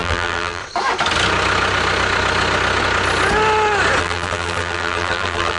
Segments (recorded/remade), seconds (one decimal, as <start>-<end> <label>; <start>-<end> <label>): 0.0-0.6 remade; 0.6-4.0 recorded; 4.0-5.6 remade